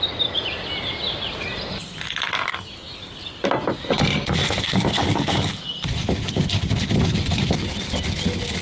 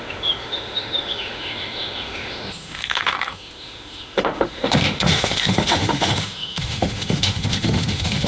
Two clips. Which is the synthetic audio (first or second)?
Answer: second